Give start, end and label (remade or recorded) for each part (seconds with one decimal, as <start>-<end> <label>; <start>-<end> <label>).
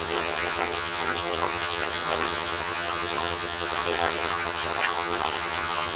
0.0-6.0 remade